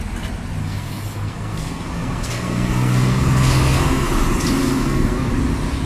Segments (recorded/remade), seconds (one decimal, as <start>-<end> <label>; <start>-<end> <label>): 0.0-0.6 recorded; 0.6-4.1 remade; 4.1-4.6 recorded; 4.6-5.3 remade; 5.3-5.9 recorded